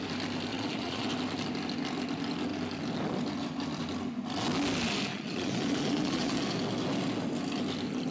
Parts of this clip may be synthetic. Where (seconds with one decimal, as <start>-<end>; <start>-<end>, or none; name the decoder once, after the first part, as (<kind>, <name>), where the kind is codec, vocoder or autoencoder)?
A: 0.5-1.1 (vocoder, Vocos); 5.1-6.4